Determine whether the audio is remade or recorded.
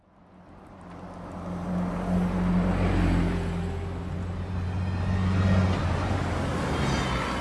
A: recorded